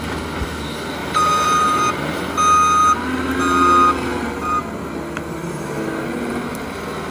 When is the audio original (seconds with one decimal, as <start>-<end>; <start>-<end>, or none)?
0.0-1.0; 2.3-2.8; 3.4-7.1

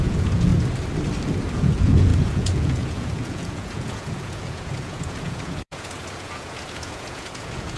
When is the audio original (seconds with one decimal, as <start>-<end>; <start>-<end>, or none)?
0.5-1.5

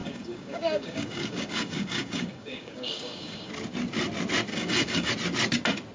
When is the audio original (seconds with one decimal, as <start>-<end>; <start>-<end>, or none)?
3.5-4.5; 5.1-5.9